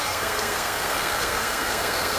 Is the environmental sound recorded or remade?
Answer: remade